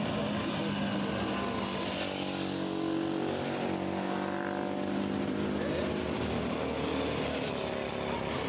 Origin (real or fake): real